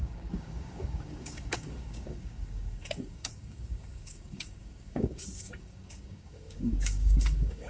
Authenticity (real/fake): fake